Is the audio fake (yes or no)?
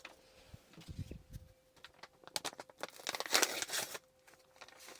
no